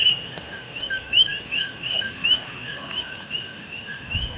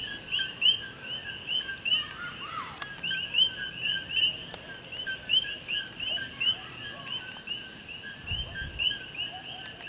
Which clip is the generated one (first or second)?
first